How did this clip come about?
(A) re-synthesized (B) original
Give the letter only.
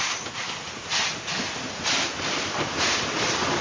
B